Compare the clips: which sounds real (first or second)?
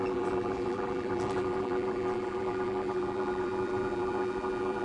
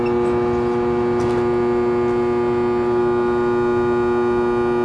second